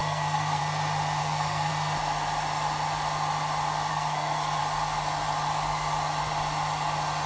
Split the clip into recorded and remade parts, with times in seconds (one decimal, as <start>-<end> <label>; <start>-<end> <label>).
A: 0.0-0.6 remade; 0.6-1.2 recorded; 1.2-1.7 remade; 1.7-3.9 recorded; 3.9-4.6 remade; 4.6-7.3 recorded